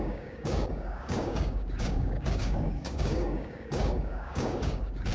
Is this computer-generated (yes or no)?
yes